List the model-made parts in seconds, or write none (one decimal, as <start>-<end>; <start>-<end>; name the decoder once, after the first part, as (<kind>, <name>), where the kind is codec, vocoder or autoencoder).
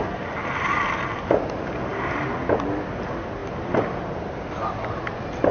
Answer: none